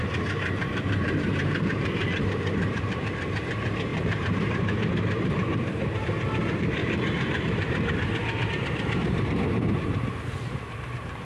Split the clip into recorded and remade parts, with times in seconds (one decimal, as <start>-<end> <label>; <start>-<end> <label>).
0.0-11.2 remade